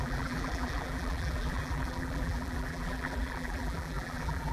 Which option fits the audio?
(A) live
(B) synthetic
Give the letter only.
B